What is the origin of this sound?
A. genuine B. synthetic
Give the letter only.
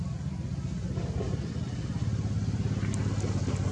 A